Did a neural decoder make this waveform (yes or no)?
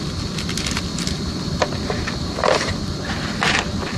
no